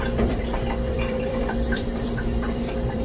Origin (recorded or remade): remade